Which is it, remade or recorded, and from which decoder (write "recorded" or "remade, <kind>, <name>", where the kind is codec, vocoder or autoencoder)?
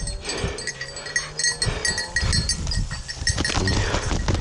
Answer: recorded